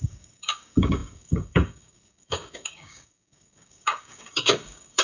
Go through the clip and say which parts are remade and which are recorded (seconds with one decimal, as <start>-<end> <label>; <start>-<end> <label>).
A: 0.0-5.0 remade